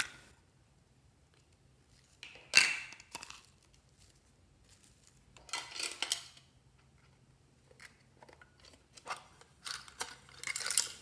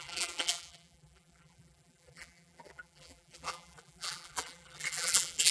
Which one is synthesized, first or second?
second